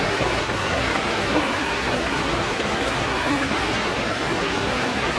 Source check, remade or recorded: remade